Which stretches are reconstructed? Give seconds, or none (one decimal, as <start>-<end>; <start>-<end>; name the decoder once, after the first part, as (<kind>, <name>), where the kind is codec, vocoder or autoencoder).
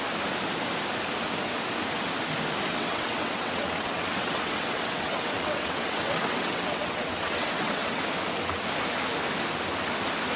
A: 2.7-8.0 (vocoder, WaveNeXt)